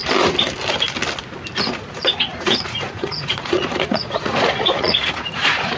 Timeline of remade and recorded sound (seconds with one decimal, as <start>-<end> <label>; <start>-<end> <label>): 0.0-1.7 recorded; 1.7-5.8 remade